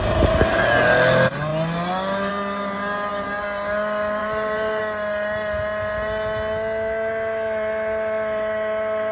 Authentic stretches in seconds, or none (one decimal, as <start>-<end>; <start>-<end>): 0.0-4.2; 4.8-9.1